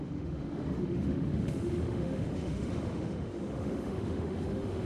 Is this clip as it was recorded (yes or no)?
no